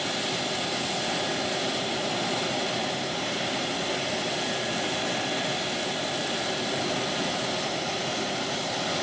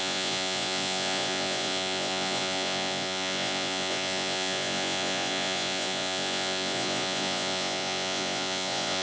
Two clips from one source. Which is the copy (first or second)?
second